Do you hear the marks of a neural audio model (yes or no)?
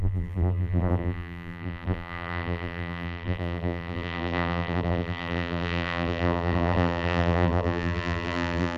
yes